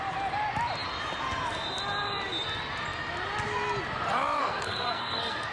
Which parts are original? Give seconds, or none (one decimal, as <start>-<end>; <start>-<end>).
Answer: 0.0-4.4